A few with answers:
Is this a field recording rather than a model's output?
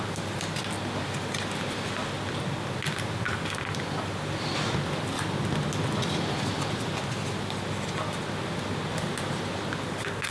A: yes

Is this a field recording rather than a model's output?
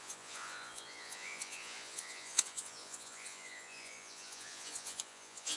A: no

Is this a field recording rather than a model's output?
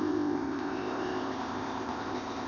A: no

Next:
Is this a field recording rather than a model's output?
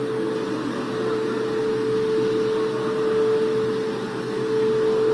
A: yes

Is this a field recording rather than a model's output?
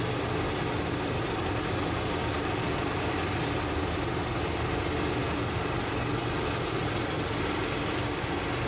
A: yes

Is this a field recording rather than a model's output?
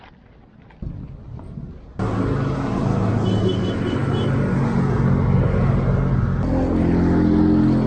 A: yes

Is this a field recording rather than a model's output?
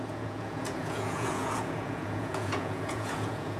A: no